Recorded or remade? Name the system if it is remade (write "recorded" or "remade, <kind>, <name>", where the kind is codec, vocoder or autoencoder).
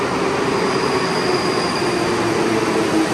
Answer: recorded